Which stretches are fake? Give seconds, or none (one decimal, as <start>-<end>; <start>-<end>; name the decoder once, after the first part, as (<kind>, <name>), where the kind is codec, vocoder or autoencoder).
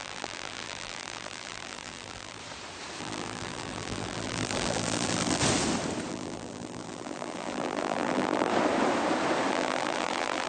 0.0-2.4 (vocoder, BigVGAN v2); 3.0-5.4; 6.1-8.5; 9.5-10.5